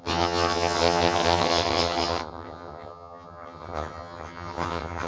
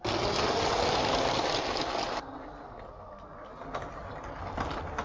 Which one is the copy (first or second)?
first